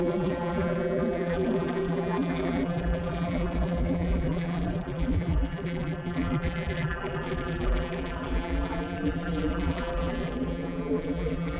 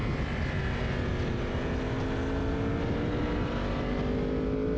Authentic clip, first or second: second